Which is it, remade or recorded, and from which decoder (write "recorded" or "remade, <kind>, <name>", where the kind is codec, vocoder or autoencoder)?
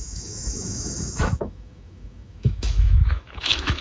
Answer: remade, autoencoder, DAC-VAE